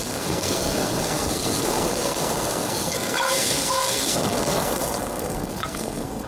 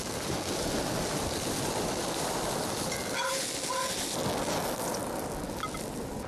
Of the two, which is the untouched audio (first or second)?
second